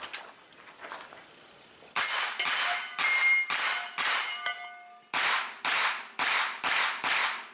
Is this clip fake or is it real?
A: real